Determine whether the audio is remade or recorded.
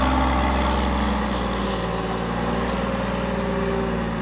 recorded